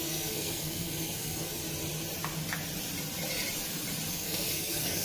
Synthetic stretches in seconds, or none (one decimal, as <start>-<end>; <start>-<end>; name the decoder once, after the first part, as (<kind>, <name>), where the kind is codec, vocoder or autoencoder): 0.0-1.6 (codec, SNAC); 4.1-5.0